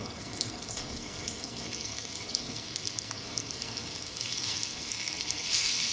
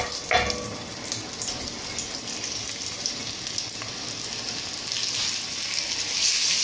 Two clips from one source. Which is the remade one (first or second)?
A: first